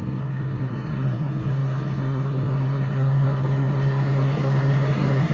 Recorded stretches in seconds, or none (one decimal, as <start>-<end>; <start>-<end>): none